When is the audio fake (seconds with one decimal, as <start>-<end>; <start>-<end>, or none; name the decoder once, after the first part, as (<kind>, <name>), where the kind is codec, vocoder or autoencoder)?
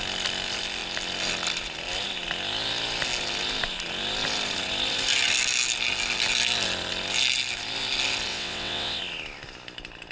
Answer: 8.3-9.0 (vocoder, WaveNeXt)